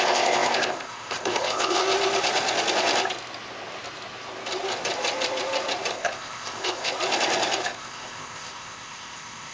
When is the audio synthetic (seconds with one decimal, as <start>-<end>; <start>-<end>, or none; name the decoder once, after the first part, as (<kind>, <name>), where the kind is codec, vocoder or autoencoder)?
0.0-1.8 (codec, ZipCodec); 5.9-6.9; 7.6-9.5